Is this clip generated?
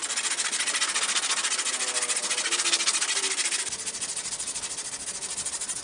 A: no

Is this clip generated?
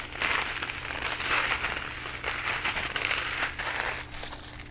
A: no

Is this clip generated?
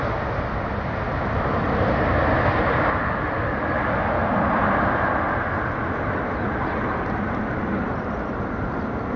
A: no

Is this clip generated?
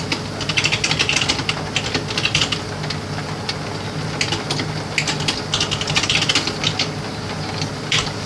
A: no